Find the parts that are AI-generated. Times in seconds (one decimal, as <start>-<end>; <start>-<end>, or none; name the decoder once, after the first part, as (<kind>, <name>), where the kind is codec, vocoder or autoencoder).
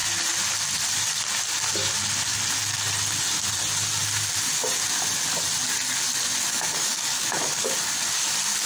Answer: 6.5-7.7 (codec, DAC)